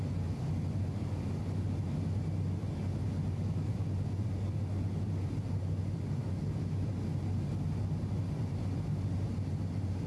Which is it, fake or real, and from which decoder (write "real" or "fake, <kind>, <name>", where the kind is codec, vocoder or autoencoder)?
real